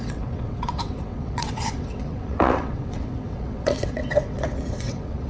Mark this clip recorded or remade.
remade